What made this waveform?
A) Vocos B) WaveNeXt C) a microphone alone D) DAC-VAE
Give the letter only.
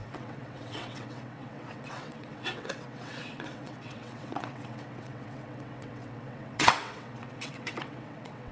B